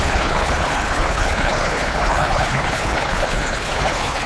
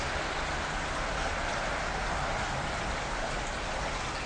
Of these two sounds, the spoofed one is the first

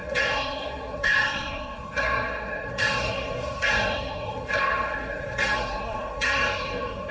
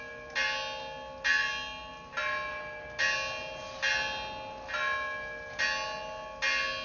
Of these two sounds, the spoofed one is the first